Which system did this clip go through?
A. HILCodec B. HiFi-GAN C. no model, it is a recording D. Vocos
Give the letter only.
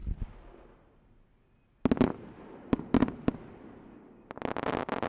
C